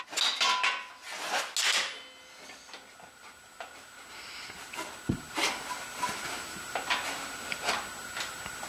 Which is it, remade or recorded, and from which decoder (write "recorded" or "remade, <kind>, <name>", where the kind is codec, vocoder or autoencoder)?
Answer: recorded